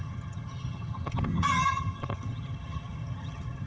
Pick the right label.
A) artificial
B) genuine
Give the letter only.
A